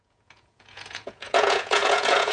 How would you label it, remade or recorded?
remade